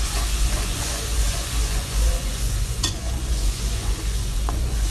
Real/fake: fake